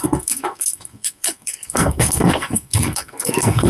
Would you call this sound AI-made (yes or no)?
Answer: yes